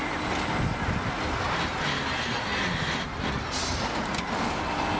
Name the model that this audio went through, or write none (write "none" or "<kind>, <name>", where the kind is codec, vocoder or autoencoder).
none